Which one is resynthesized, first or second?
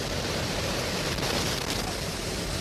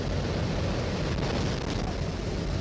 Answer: first